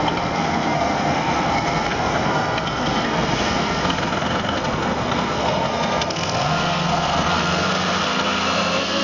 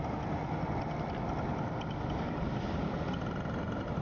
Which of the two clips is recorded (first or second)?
second